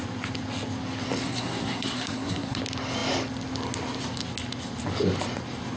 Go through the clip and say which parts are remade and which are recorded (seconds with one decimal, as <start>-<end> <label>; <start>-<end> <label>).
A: 0.0-1.2 recorded; 1.2-2.6 remade; 2.6-5.8 recorded